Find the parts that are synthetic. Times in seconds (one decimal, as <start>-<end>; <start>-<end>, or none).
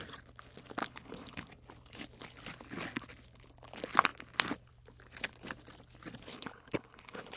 0.8-1.5; 6.3-7.4